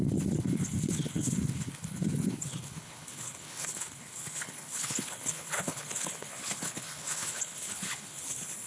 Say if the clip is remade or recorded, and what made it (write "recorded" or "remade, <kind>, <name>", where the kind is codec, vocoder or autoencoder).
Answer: remade, codec, HILCodec